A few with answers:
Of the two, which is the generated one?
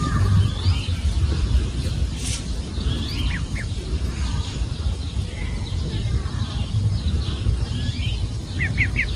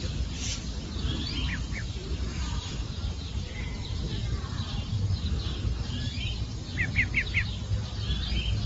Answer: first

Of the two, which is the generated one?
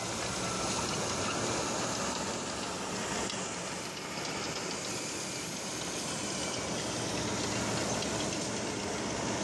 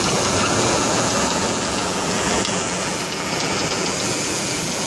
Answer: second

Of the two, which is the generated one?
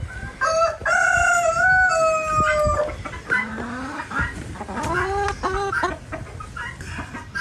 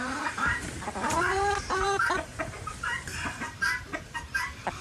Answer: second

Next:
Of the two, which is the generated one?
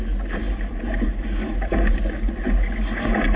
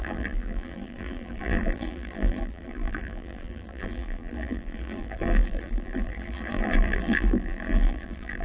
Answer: second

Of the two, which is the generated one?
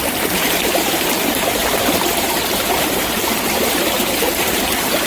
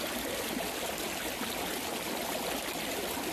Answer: first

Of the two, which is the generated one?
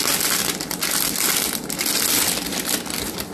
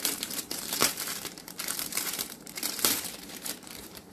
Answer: second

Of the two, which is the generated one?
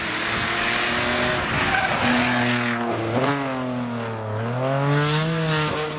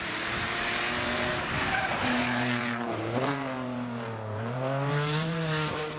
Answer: second